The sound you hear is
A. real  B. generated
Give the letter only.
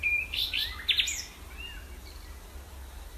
A